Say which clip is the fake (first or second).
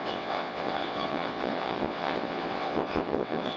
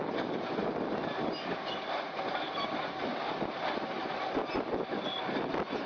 first